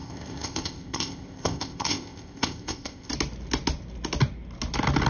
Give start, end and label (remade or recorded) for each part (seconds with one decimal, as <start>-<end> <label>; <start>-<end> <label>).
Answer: 0.0-3.1 remade; 3.1-5.1 recorded